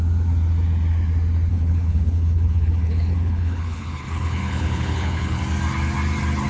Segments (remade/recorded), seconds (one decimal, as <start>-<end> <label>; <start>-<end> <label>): 0.0-1.5 recorded; 1.5-5.4 remade; 5.4-6.5 recorded